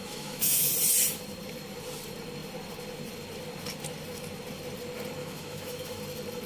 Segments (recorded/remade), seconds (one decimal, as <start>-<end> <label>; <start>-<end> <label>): 0.0-0.7 remade; 0.7-5.2 recorded; 5.2-6.0 remade; 6.0-6.5 recorded